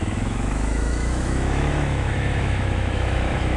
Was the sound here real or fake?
fake